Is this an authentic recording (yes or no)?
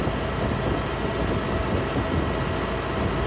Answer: yes